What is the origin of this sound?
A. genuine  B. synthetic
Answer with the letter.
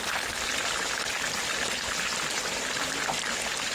B